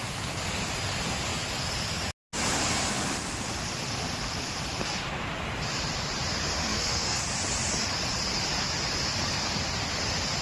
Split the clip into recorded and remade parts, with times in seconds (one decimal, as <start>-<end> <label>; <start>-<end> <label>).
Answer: 0.0-6.6 recorded; 6.6-7.2 remade; 7.2-10.4 recorded